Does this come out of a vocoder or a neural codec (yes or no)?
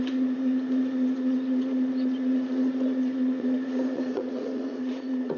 yes